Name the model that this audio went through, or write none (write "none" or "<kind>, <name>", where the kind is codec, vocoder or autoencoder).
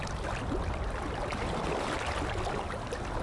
none